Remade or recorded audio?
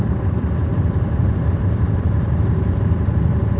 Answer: remade